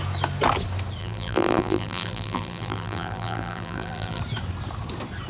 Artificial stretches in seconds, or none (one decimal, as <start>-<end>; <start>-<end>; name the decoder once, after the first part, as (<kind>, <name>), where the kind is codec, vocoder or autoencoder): 1.0-4.2 (vocoder, BigVGAN v2)